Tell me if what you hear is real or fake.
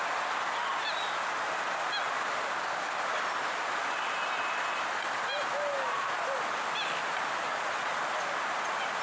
real